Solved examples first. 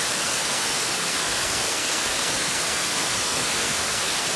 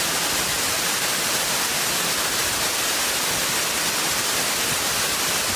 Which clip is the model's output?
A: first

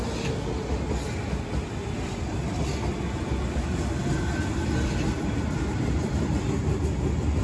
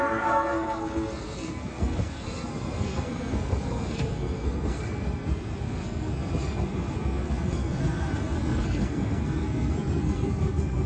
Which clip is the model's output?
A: second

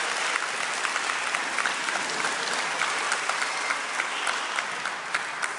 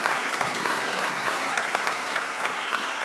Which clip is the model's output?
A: second